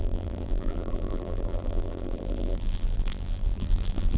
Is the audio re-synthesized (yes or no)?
yes